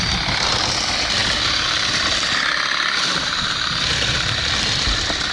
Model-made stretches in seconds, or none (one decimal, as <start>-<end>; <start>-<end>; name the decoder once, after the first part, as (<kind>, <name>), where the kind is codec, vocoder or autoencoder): none